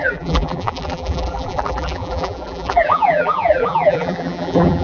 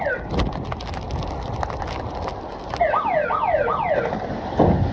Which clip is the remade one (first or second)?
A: first